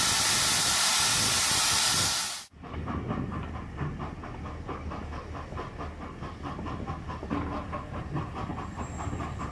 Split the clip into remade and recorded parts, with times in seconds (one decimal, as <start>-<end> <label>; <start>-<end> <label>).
0.0-9.5 recorded